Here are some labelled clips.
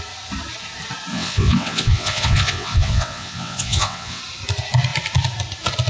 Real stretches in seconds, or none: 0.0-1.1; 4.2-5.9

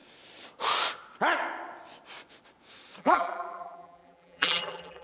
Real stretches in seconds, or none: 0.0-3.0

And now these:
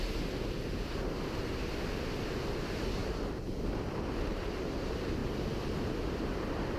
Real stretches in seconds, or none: 0.0-6.8

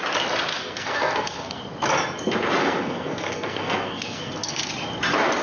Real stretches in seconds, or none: 0.0-0.5; 1.6-2.6; 4.7-5.4